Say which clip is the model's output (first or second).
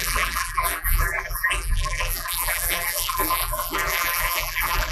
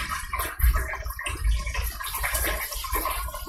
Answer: first